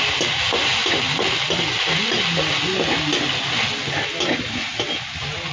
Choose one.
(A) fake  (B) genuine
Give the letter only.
B